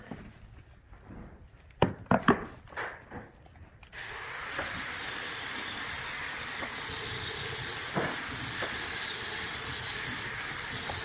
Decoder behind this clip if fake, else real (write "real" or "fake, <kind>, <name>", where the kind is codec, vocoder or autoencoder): real